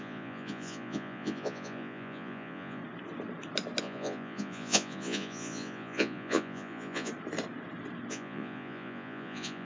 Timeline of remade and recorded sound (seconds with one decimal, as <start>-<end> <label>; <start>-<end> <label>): 0.0-2.8 remade; 2.8-3.8 recorded; 3.8-7.1 remade; 7.1-8.1 recorded; 8.1-9.6 remade